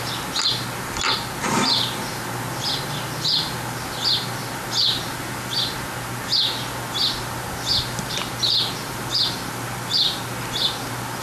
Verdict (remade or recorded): recorded